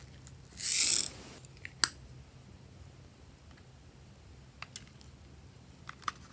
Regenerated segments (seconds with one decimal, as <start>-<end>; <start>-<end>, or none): none